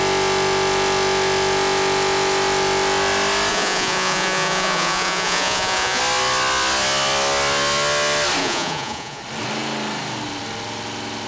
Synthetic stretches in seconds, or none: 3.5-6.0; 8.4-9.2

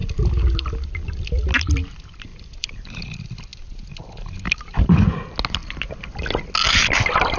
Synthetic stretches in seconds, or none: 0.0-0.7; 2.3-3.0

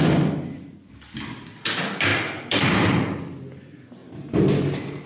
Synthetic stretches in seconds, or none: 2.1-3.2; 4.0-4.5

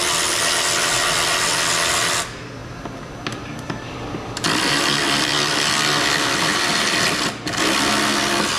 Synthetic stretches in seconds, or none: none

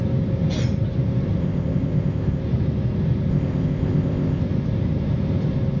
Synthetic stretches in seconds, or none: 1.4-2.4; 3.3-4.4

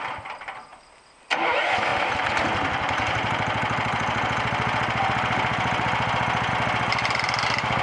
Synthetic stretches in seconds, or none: none

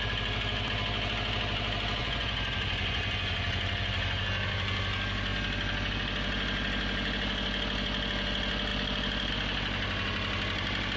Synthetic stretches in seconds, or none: 2.0-4.2

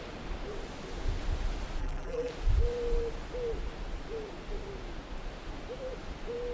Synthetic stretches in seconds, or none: 1.8-2.3